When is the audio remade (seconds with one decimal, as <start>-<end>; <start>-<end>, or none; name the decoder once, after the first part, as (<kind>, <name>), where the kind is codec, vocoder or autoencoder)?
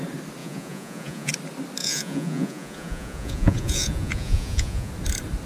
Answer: 0.4-1.3 (vocoder, Vocos); 1.8-4.9